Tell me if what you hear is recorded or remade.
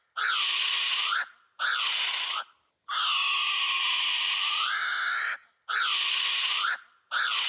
recorded